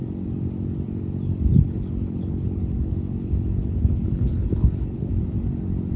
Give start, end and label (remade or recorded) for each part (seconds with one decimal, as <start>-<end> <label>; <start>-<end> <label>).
0.0-1.5 recorded; 1.5-5.1 remade; 5.1-6.0 recorded